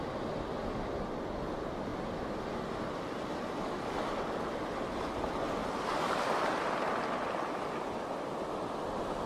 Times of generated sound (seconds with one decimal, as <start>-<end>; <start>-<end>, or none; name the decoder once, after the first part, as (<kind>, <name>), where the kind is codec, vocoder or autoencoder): none